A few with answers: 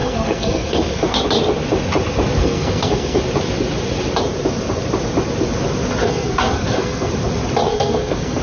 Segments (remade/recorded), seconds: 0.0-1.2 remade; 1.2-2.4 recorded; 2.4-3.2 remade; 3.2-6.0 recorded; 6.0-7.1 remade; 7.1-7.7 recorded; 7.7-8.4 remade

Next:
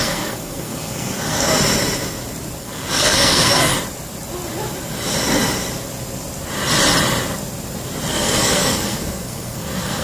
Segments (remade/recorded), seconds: 0.0-1.5 remade; 1.5-2.6 recorded; 2.6-3.7 remade; 3.7-8.1 recorded; 8.1-10.0 remade

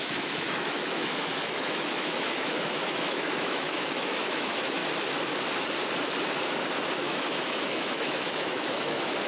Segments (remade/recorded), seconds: 0.0-4.8 remade; 4.8-6.9 recorded; 6.9-9.3 remade

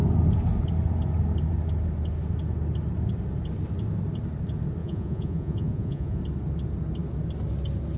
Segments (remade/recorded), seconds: 0.0-4.8 recorded; 4.8-6.2 remade; 6.2-8.0 recorded